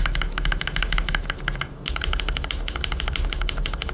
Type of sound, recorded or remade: remade